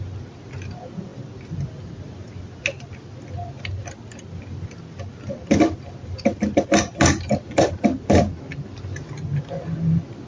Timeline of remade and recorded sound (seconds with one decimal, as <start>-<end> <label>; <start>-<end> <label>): 0.0-10.3 recorded

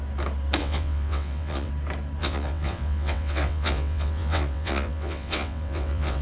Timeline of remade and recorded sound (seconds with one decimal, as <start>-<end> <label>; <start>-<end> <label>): 0.0-0.6 recorded; 0.6-1.7 remade; 1.7-2.2 recorded; 2.2-6.2 remade